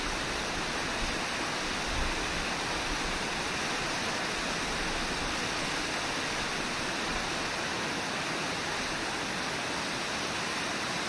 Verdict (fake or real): real